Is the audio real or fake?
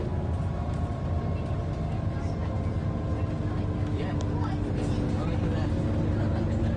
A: real